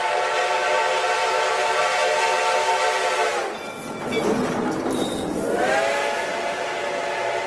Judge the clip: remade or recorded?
recorded